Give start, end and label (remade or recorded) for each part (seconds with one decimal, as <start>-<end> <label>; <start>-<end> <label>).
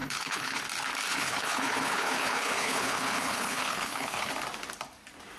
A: 0.0-0.6 remade; 0.6-1.1 recorded; 1.1-4.3 remade; 4.3-5.4 recorded